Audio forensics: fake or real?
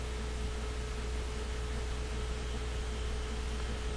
real